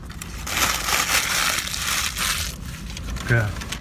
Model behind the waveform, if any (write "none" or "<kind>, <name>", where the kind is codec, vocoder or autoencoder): none